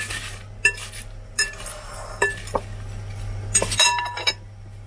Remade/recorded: recorded